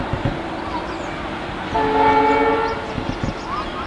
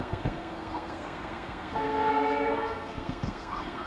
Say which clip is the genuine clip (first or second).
first